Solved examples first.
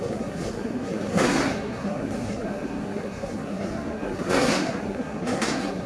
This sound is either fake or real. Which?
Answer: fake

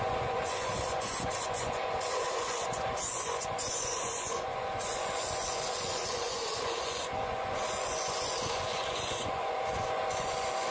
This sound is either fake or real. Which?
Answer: fake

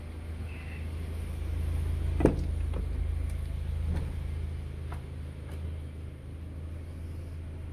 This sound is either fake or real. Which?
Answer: real